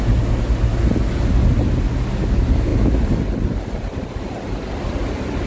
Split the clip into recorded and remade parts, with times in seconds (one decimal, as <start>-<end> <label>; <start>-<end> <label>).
0.0-5.5 recorded

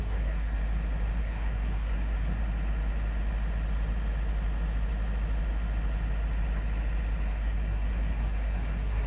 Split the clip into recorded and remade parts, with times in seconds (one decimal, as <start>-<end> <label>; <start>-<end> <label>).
0.0-0.6 remade; 0.6-1.2 recorded; 1.2-2.4 remade; 2.4-7.3 recorded; 7.3-9.1 remade